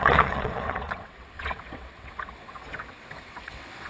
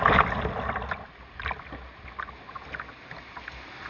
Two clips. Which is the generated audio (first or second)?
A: first